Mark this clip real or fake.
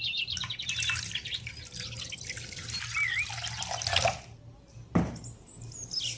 real